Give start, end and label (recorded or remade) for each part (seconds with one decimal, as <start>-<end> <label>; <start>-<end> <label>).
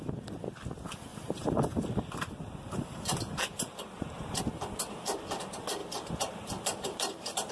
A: 0.0-1.1 recorded; 1.1-4.4 remade; 4.4-5.8 recorded; 5.8-7.5 remade